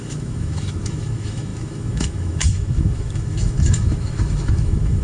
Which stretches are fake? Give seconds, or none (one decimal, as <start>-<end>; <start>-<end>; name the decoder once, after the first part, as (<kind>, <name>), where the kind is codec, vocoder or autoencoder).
0.0-5.0 (autoencoder, DAC-VAE)